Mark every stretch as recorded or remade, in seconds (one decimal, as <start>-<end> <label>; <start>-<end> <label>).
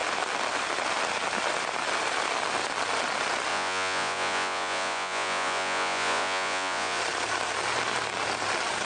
0.0-3.5 recorded; 3.5-7.0 remade; 7.0-8.9 recorded